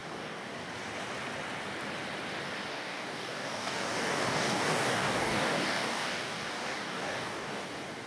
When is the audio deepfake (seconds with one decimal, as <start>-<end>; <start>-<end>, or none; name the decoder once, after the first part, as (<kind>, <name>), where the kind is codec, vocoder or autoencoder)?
0.0-0.5 (codec, DAC); 2.7-7.6